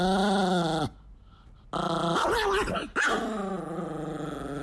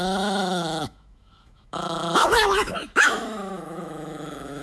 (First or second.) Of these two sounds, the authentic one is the first